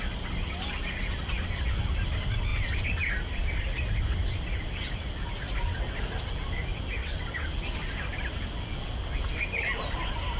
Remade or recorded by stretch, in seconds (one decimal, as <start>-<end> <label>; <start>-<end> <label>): 0.0-7.0 recorded; 7.0-7.5 remade; 7.5-10.4 recorded